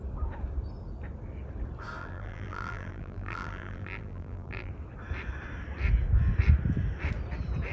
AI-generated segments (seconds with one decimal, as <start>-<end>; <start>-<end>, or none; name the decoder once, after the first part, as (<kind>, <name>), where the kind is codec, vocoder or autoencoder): 2.0-4.7 (vocoder, BigVGAN v2)